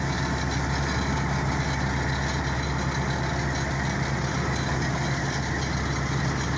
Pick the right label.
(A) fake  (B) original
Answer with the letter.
B